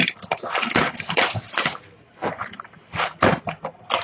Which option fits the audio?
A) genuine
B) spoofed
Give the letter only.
B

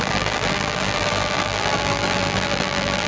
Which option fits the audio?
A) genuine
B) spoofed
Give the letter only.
B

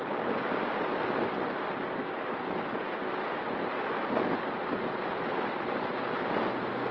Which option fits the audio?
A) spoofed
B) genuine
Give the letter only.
B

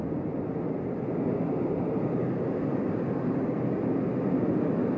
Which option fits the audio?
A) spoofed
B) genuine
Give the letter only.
B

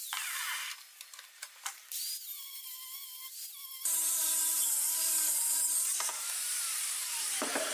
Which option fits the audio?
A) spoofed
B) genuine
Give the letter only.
A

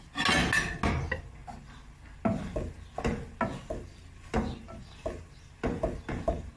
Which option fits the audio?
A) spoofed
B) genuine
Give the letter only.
B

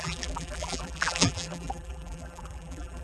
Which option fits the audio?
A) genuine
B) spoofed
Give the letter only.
B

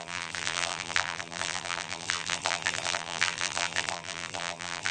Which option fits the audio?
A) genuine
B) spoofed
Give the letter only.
B